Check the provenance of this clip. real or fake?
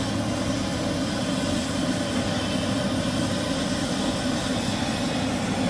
real